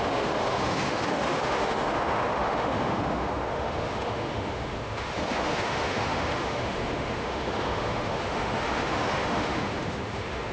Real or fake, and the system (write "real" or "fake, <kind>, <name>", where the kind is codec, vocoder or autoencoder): fake, autoencoder, DAC-VAE